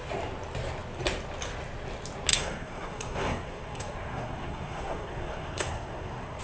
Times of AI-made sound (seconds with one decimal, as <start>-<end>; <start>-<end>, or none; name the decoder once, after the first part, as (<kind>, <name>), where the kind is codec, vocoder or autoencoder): 2.3-6.4 (codec, SNAC)